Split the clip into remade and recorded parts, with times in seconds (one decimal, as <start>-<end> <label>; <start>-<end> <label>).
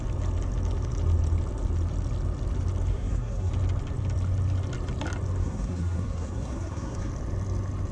0.0-2.9 recorded; 2.9-3.5 remade; 3.5-5.4 recorded; 5.4-7.1 remade; 7.1-7.9 recorded